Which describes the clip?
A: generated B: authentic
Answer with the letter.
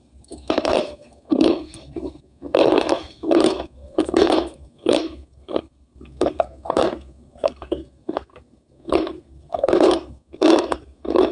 A